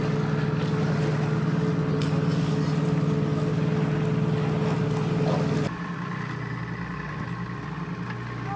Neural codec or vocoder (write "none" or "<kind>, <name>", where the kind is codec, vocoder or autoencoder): none